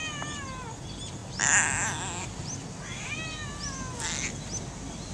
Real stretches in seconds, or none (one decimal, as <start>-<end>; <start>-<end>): 0.0-5.1